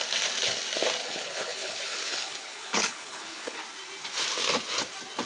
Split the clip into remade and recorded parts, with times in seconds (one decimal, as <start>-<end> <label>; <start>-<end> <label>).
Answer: 0.0-1.0 recorded; 1.0-3.6 remade; 3.6-5.3 recorded